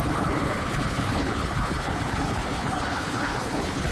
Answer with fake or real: fake